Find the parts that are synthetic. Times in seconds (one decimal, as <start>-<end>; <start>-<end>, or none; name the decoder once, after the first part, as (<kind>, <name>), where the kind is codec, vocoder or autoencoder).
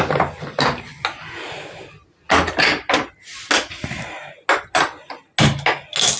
none